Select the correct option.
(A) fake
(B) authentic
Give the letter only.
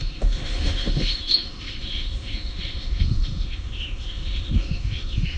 A